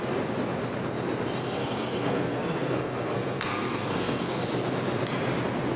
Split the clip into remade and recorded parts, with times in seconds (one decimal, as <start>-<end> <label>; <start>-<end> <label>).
0.0-1.6 recorded; 1.6-4.4 remade; 4.4-5.8 recorded